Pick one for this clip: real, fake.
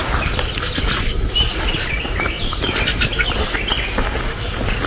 real